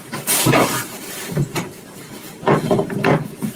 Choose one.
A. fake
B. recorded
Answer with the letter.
A